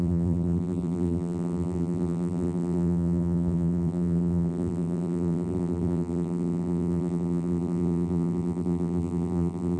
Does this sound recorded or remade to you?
remade